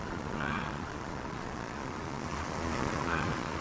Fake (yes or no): yes